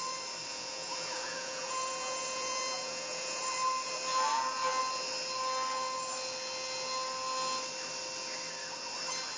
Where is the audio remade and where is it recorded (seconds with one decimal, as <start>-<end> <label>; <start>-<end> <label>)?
0.0-0.5 recorded; 0.5-3.4 remade; 3.4-9.4 recorded